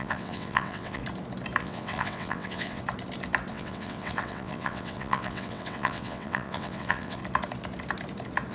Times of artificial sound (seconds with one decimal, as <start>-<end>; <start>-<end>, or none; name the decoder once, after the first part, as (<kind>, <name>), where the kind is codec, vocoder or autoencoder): 0.0-1.0 (vocoder, WaveNeXt); 1.6-2.8; 3.5-7.2

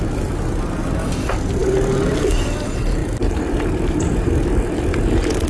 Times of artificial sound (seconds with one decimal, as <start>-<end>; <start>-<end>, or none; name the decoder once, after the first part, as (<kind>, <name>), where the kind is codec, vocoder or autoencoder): 3.0-4.3 (vocoder, BigVGAN v2)

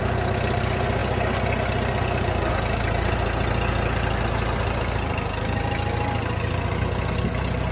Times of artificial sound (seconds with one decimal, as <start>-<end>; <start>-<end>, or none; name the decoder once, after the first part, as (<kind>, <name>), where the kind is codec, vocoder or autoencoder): none

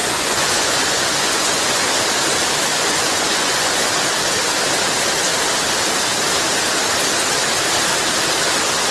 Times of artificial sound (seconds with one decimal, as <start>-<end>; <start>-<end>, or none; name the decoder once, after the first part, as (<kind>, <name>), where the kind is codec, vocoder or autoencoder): 0.0-1.9 (vocoder, Vocos); 2.7-3.9

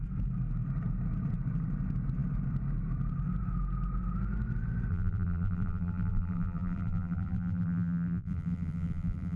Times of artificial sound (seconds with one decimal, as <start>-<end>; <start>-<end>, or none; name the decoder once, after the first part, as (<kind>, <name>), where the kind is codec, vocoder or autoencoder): 4.9-9.4 (vocoder, BigVGAN v2)